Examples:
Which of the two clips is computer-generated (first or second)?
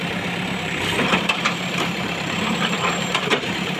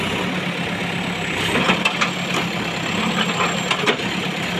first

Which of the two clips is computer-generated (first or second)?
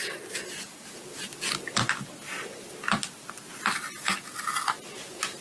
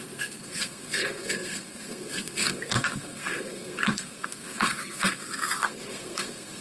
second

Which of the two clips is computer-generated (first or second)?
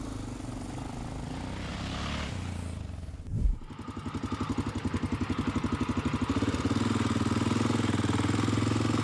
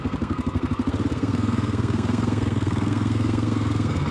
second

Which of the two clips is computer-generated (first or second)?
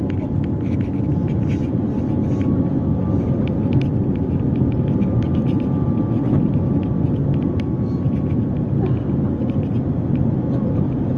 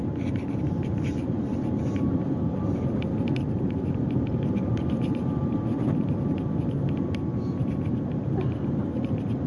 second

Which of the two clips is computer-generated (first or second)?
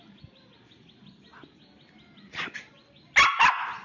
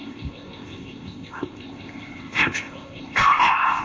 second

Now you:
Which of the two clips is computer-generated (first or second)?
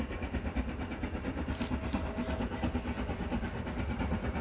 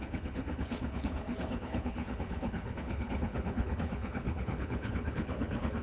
second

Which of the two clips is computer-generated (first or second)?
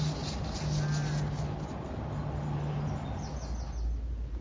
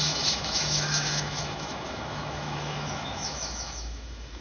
second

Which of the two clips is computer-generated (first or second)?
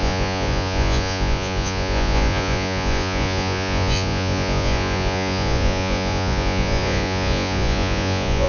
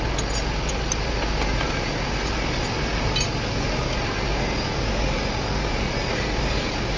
first